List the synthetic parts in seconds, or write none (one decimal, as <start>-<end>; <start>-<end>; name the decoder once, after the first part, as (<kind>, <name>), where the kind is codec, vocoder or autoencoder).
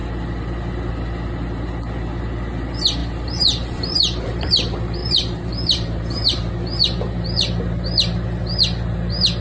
3.0-4.5 (vocoder, BigVGAN v2); 5.0-6.5